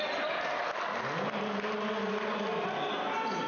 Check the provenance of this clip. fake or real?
real